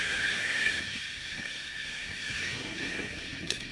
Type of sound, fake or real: fake